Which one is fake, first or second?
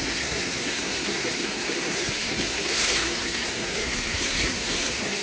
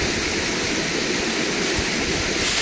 first